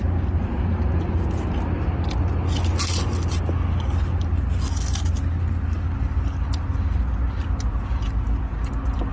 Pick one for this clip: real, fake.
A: real